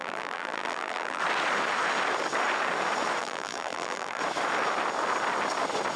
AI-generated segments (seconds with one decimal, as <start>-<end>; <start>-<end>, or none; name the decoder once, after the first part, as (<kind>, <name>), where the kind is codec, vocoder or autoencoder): 0.0-1.2 (vocoder, BigVGAN v2); 3.2-4.2